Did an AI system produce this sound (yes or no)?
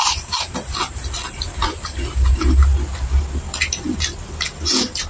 no